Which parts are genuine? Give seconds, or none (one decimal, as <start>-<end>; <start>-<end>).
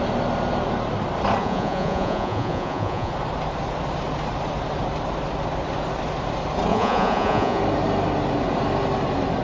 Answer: 0.0-1.4; 3.1-6.7; 7.6-9.4